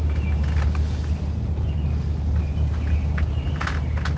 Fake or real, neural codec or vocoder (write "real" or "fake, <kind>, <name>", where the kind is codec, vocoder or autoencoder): real